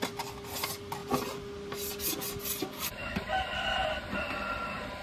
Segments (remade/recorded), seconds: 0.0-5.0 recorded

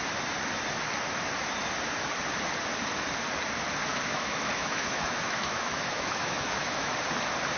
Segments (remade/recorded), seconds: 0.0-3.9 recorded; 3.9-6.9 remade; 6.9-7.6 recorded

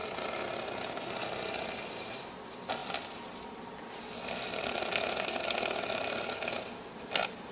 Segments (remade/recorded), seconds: 0.0-7.5 recorded

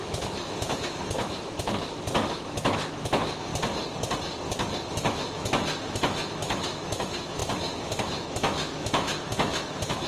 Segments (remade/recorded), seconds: 0.0-3.5 remade; 3.5-4.9 recorded; 4.9-10.1 remade

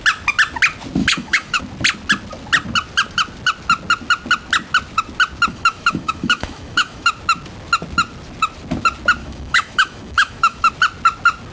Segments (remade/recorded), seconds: 0.0-1.0 recorded; 1.0-1.6 remade; 1.6-5.5 recorded; 5.5-7.1 remade; 7.1-9.2 recorded; 9.2-10.7 remade; 10.7-11.5 recorded